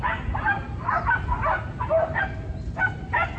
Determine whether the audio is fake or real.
real